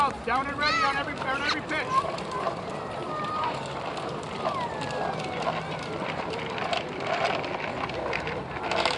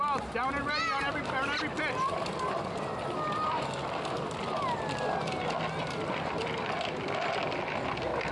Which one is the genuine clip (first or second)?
second